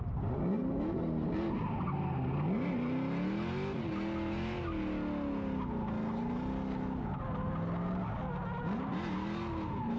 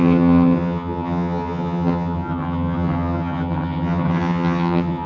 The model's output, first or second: second